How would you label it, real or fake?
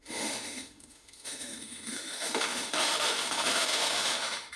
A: fake